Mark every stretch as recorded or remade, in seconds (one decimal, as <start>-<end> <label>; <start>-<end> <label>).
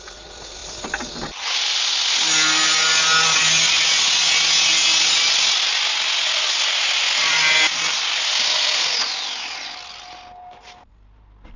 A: 0.0-11.6 recorded